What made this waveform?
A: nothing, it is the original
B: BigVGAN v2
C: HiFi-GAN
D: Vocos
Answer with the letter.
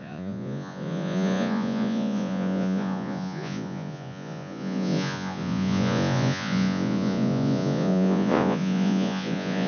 D